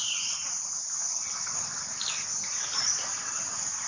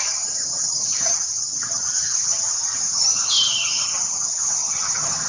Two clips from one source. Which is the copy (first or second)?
second